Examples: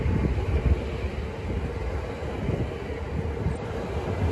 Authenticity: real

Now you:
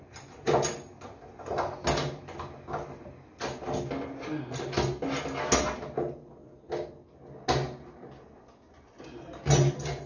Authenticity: real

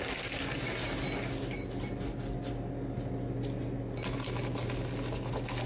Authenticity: real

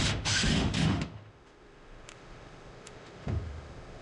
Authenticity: fake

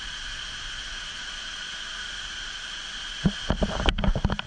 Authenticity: real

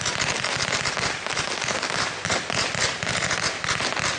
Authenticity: real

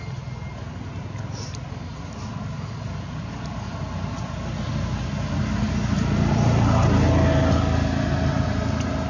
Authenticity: real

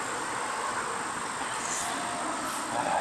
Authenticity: real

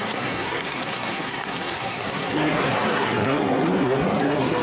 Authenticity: fake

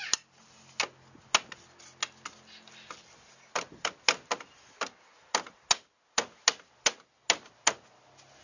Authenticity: real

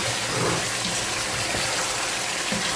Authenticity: real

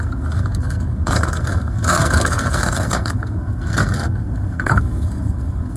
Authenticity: fake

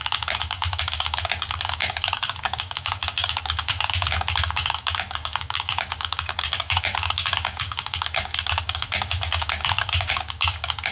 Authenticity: fake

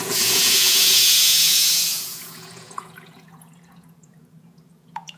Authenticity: fake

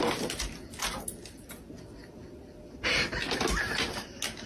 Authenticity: real